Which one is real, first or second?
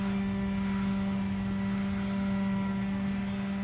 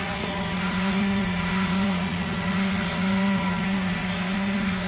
first